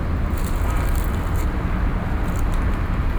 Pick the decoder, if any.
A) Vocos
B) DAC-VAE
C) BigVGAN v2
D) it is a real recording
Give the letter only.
D